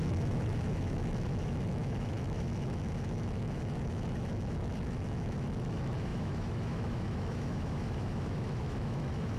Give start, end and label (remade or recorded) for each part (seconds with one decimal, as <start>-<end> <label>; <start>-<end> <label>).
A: 0.0-9.4 remade